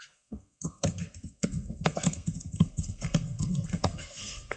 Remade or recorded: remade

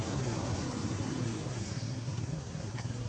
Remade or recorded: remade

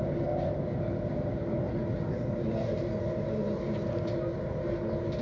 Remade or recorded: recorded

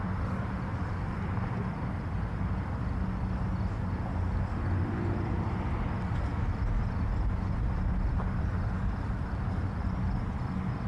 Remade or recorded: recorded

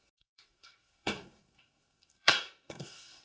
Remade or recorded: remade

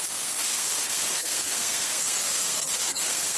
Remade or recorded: remade